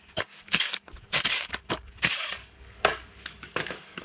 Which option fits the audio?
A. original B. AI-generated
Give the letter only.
B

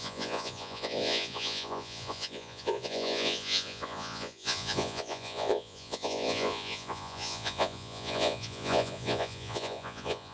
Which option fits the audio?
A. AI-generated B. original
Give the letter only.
A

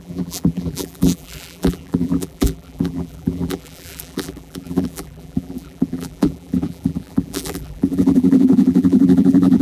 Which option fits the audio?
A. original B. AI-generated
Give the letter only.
B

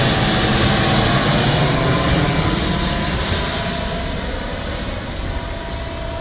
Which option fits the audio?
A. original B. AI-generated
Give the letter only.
A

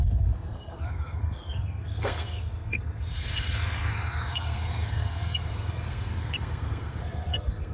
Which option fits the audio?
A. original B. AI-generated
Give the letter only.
B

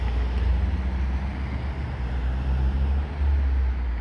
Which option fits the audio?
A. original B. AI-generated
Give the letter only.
A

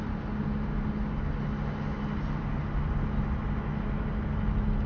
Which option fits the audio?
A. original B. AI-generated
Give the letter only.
A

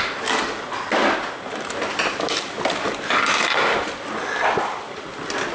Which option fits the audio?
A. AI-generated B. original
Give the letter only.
B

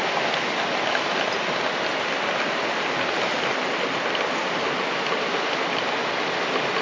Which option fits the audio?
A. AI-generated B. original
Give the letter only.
B